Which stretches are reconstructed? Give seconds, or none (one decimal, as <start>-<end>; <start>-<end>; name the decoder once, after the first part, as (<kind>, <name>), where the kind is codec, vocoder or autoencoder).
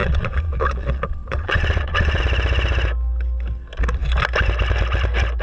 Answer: 0.0-2.2 (vocoder, Vocos)